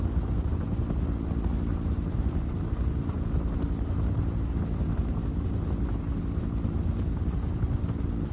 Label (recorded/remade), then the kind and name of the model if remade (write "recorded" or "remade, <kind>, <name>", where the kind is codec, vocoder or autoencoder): recorded